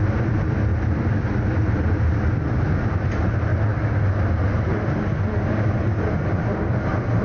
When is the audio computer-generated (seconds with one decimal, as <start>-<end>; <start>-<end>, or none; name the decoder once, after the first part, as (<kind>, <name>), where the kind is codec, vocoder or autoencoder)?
0.0-0.7 (vocoder, BigVGAN v2); 2.5-3.5; 6.1-7.2